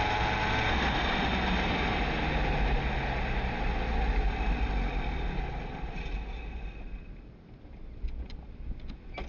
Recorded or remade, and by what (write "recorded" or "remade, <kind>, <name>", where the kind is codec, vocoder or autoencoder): recorded